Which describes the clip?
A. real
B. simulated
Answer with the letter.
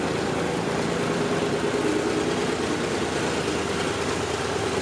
A